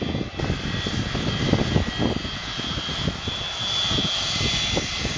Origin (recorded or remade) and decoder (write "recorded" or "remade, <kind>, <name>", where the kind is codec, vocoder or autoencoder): recorded